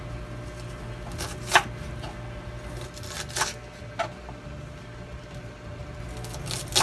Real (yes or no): yes